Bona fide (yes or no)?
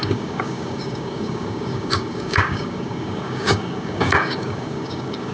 no